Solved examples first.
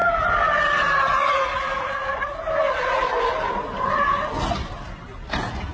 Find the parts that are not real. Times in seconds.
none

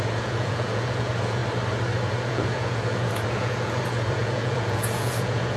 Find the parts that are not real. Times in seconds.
0.0-1.4 (vocoder, Vocos); 2.3-5.6

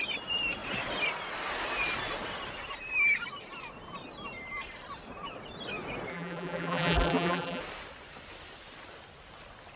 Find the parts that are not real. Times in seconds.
6.1-7.6 (vocoder, BigVGAN v2)

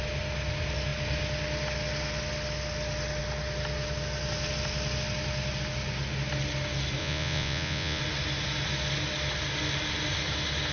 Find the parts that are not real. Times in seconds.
7.0-8.0 (vocoder, Vocos)